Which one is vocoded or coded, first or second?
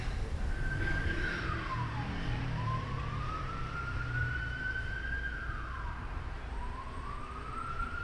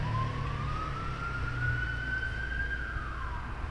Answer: first